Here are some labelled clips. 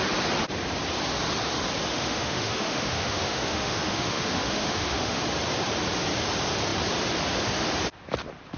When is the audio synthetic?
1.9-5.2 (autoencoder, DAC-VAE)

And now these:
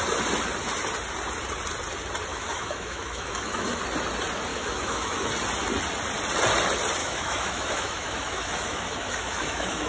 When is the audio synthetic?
2.3-3.8 (autoencoder, DAC-VAE); 4.5-5.3; 7.0-9.9

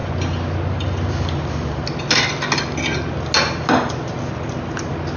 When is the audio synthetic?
none

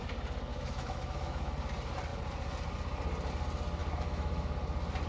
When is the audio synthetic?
0.5-1.5 (autoencoder, DAC-VAE); 3.8-4.5

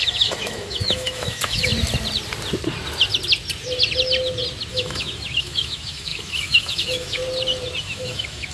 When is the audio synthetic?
0.0-1.7 (autoencoder, DAC-VAE); 4.7-7.2; 7.8-8.5